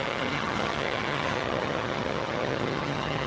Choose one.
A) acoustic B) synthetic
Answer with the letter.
B